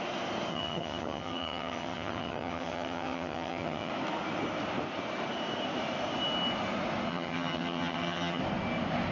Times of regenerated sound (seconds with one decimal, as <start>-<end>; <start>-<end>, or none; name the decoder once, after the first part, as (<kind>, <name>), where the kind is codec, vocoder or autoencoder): 0.5-3.9 (vocoder, HiFi-GAN); 7.1-8.4